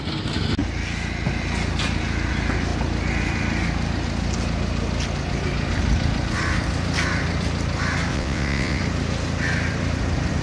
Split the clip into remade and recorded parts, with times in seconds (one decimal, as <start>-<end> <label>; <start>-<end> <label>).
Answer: 0.0-8.1 recorded; 8.1-8.8 remade; 8.8-10.4 recorded